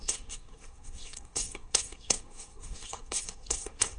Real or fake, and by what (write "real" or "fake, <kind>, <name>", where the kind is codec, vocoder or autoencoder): fake, codec, SNAC